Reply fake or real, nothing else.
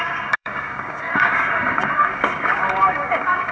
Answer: fake